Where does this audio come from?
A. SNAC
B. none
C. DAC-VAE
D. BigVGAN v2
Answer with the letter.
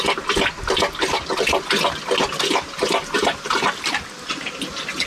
B